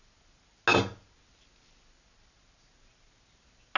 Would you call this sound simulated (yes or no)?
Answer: no